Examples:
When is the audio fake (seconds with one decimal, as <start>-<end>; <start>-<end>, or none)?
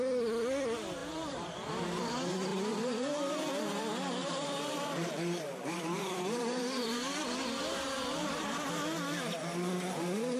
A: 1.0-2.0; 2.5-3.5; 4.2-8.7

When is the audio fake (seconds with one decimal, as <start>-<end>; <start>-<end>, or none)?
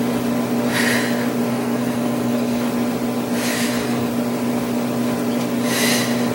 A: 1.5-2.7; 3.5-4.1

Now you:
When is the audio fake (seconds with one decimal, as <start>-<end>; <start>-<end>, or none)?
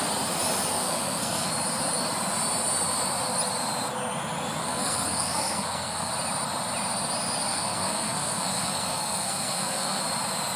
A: 0.7-1.5; 4.6-6.1; 7.5-10.0